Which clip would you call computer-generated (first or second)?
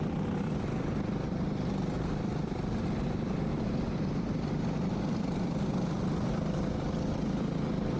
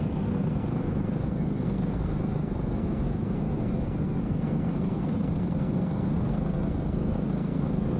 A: second